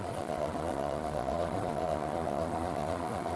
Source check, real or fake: fake